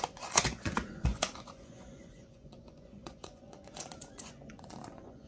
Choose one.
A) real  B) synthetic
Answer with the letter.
B